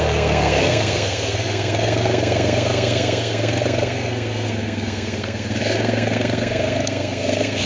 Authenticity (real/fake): fake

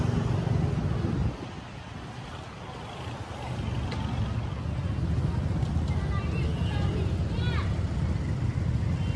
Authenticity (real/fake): real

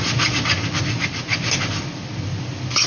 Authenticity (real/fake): real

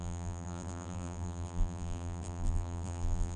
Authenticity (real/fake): fake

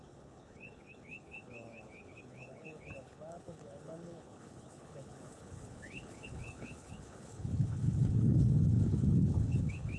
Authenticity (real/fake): fake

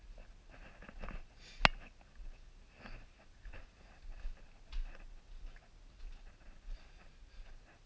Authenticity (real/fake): real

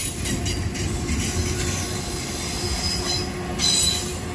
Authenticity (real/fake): real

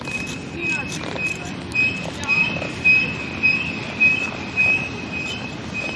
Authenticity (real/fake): real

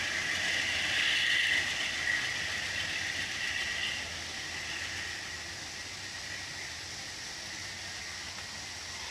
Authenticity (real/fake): real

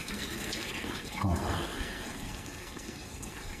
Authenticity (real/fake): fake